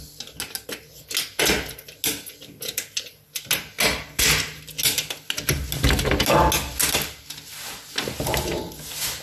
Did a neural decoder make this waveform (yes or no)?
no